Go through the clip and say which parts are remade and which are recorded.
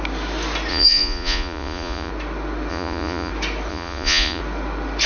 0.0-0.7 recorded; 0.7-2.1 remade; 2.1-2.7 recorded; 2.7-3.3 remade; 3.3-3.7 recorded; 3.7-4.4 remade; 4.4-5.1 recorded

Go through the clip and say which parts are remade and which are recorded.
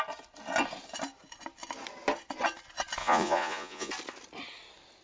0.0-3.0 recorded; 3.0-3.9 remade; 3.9-5.0 recorded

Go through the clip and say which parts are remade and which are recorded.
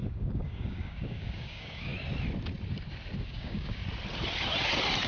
0.0-1.9 remade; 1.9-3.2 recorded; 3.2-3.8 remade; 3.8-5.1 recorded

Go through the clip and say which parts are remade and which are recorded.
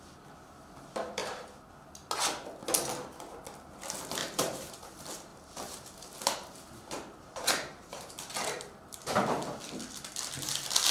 0.0-1.2 recorded; 1.2-1.7 remade; 1.7-4.2 recorded; 4.2-4.7 remade; 4.7-5.3 recorded; 5.3-8.1 remade; 8.1-10.9 recorded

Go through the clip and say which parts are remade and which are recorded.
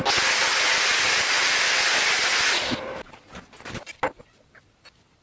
0.0-5.2 recorded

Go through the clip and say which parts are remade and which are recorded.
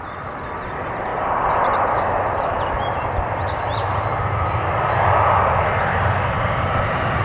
0.0-1.1 recorded; 1.1-4.9 remade; 4.9-7.2 recorded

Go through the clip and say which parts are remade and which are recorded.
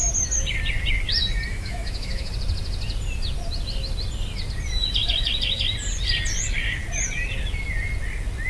0.0-1.5 recorded; 1.5-2.3 remade; 2.3-8.5 recorded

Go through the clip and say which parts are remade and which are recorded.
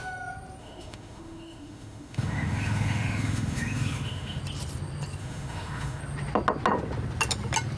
0.0-0.6 recorded; 0.6-4.4 remade; 4.4-5.2 recorded; 5.2-6.0 remade; 6.0-7.8 recorded